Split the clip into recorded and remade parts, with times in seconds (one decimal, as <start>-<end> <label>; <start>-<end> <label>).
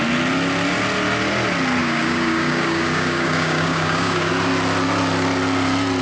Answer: 0.0-1.8 recorded; 1.8-4.3 remade; 4.3-6.0 recorded